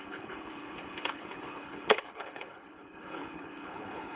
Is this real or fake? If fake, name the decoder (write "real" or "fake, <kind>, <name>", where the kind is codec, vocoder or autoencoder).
fake, codec, HILCodec